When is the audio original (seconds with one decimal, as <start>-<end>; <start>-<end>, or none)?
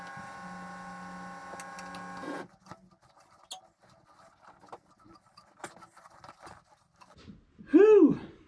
0.0-5.6; 6.4-8.5